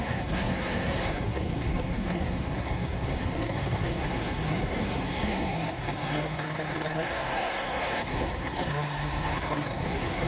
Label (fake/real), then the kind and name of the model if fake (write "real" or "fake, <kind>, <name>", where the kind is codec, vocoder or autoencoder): fake, codec, SNAC